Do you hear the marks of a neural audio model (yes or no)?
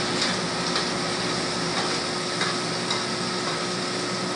no